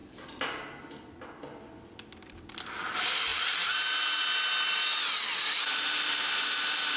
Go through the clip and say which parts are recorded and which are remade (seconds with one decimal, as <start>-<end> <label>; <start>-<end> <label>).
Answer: 0.0-7.0 recorded